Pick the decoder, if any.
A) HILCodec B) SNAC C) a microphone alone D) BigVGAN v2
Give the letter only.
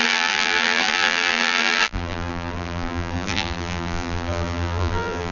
D